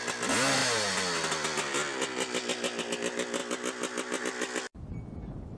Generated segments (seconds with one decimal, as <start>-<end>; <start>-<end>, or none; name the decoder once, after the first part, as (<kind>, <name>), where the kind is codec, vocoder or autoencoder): none